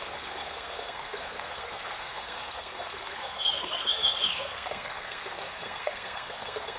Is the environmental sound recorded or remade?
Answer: remade